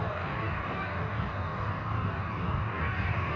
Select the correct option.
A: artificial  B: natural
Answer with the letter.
A